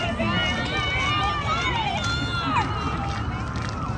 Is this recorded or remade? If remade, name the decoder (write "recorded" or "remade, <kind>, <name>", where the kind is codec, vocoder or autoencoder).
recorded